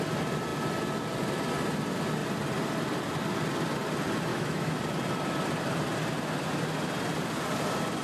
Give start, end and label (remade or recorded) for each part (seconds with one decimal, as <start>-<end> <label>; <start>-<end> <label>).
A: 0.0-4.3 recorded; 4.3-4.8 remade; 4.8-8.0 recorded